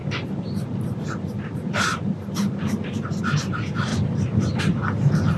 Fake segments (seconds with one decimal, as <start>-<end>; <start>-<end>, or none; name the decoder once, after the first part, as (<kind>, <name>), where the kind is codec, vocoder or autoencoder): none